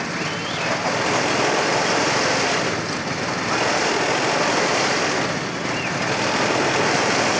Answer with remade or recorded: recorded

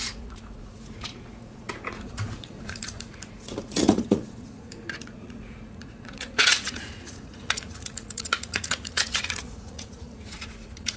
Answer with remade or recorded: remade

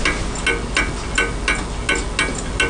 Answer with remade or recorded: recorded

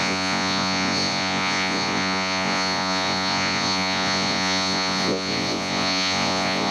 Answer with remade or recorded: remade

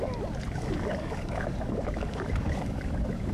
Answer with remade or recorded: remade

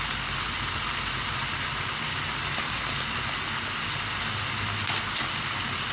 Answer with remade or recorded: recorded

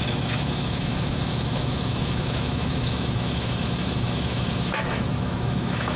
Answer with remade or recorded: remade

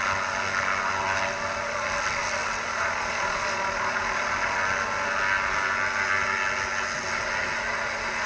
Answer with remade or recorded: recorded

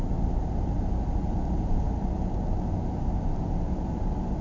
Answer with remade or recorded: recorded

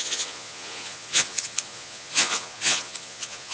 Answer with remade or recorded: remade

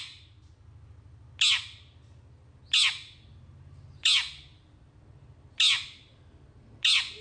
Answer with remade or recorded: recorded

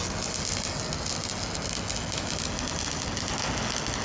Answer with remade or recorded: recorded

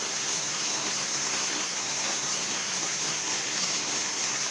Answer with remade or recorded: remade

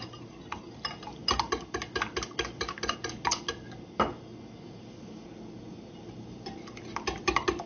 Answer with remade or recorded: recorded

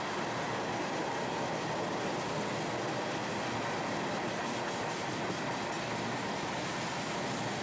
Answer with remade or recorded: recorded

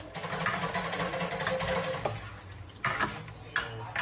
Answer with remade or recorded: recorded